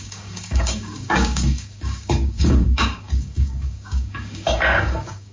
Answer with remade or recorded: remade